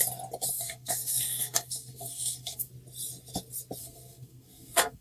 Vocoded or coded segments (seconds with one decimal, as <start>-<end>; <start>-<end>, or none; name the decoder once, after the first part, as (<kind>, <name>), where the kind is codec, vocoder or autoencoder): 0.5-2.7 (codec, SNAC); 3.8-5.0